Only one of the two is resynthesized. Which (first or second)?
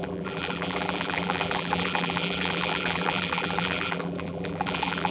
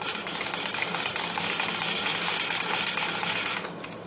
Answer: first